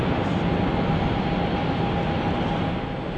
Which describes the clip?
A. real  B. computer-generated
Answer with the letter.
A